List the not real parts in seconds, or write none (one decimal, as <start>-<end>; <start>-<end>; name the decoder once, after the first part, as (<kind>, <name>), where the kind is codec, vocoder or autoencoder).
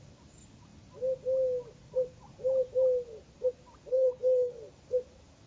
3.9-4.5 (codec, HILCodec)